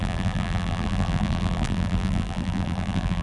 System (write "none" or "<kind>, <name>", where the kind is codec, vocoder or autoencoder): vocoder, BigVGAN v2